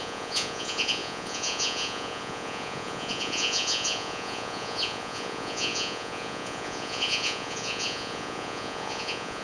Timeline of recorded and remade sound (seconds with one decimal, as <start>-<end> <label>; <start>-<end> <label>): 0.0-9.4 remade